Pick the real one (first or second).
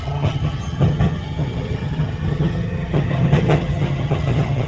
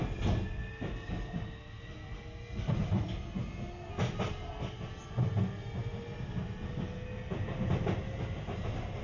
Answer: second